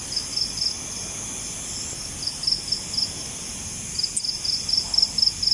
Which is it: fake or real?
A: real